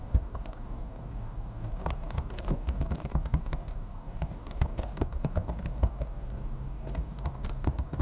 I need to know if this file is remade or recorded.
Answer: remade